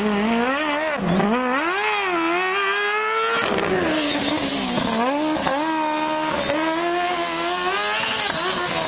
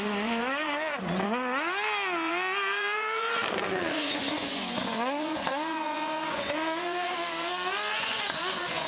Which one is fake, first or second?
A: second